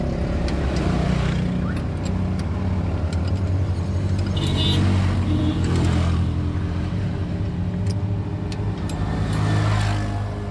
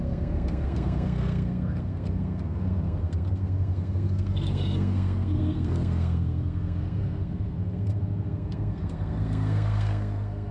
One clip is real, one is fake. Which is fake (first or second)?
second